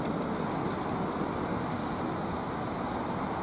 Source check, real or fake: real